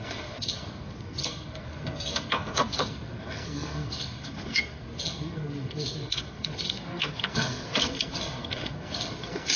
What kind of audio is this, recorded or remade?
remade